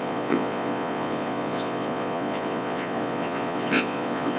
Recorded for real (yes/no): no